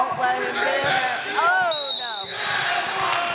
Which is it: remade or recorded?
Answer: recorded